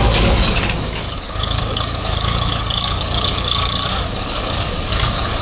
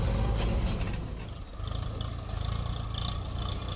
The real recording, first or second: second